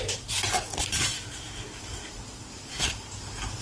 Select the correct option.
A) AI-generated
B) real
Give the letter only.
B